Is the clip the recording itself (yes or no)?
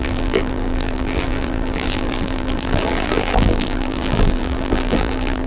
no